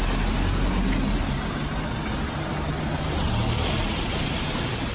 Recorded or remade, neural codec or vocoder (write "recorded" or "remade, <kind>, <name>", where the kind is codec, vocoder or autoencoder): recorded